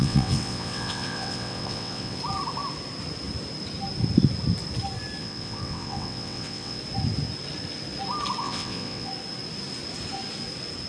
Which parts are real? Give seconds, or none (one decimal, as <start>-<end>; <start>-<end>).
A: 2.2-5.2; 6.8-8.4; 9.1-10.9